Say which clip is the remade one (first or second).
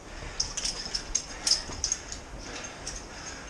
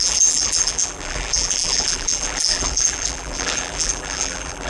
second